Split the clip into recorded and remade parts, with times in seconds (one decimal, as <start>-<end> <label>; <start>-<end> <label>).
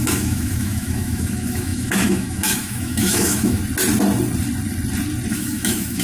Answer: 0.0-3.6 remade; 3.6-5.3 recorded; 5.3-6.0 remade